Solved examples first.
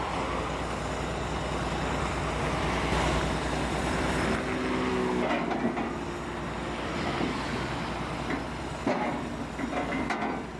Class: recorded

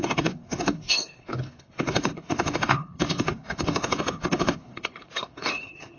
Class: remade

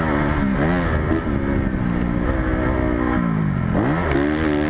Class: recorded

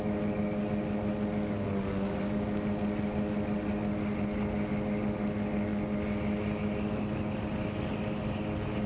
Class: recorded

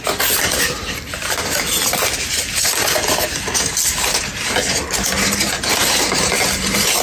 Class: recorded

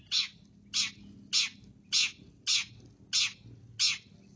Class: recorded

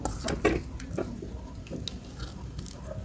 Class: recorded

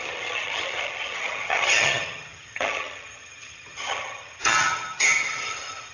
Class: remade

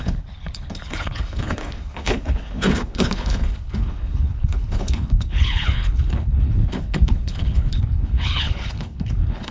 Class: remade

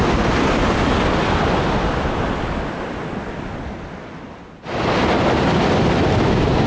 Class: recorded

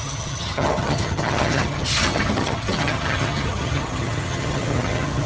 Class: remade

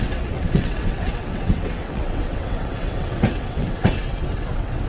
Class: remade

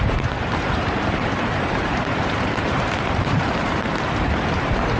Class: remade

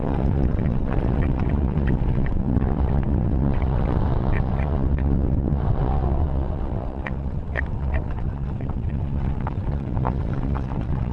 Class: remade